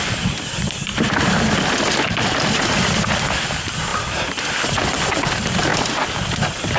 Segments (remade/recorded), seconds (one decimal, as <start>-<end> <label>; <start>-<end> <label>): 0.0-6.8 recorded

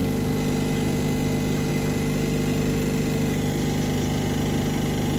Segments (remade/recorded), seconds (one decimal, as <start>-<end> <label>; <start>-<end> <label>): 0.0-5.2 recorded